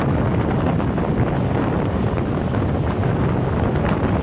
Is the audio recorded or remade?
recorded